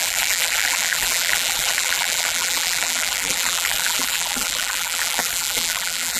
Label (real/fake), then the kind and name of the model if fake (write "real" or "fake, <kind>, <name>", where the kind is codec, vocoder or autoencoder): fake, vocoder, BigVGAN v2